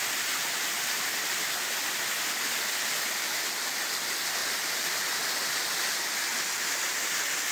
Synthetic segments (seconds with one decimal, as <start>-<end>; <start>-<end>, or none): none